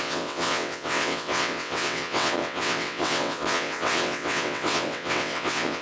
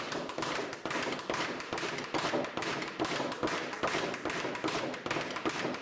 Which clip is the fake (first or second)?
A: first